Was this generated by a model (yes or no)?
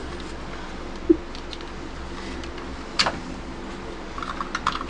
no